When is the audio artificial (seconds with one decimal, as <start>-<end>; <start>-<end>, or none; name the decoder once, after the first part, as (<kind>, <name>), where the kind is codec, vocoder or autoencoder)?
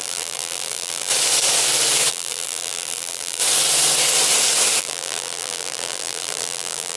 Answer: 0.0-1.1 (vocoder, BigVGAN v2); 2.1-3.4; 4.8-7.0